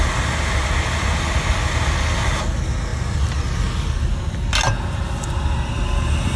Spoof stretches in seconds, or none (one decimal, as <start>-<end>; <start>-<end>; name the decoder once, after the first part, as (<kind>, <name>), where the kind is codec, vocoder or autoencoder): none